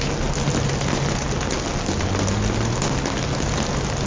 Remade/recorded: recorded